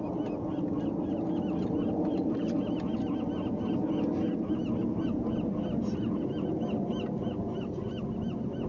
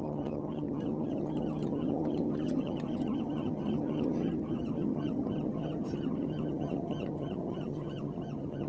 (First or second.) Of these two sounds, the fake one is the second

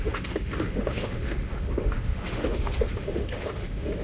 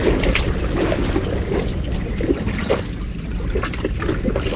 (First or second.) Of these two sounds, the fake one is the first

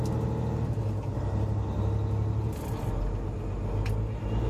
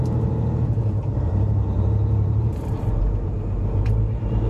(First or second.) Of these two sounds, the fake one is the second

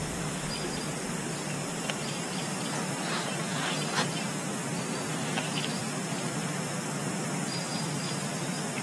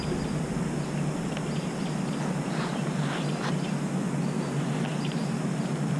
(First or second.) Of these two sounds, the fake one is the first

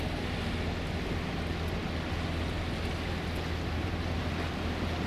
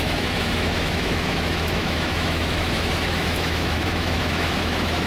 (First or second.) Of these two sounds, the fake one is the second